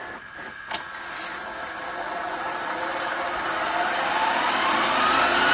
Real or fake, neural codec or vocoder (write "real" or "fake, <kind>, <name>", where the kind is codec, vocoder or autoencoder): real